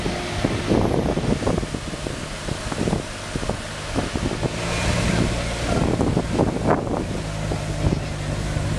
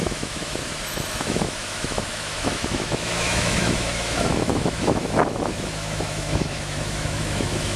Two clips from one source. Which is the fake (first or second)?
second